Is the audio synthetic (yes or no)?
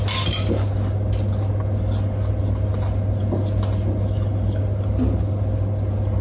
no